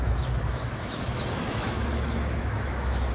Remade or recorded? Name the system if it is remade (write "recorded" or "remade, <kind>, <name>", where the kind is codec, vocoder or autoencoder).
remade, autoencoder, DAC-VAE